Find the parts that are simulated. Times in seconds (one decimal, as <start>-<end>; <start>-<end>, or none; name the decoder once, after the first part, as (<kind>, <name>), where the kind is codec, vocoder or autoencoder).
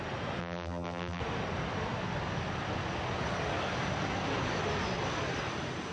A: 0.4-1.2 (vocoder, BigVGAN v2)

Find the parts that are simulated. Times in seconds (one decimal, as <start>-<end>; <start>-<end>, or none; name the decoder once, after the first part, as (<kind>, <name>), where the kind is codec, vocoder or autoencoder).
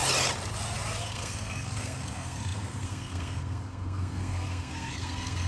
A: 1.0-5.5 (codec, SNAC)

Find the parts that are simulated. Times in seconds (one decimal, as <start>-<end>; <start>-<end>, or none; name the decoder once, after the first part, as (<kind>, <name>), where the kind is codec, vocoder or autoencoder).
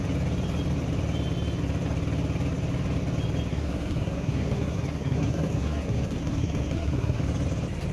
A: 3.5-7.2 (codec, SNAC)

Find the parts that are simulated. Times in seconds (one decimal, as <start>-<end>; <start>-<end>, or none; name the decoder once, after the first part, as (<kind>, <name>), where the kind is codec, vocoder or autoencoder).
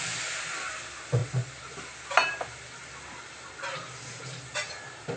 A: none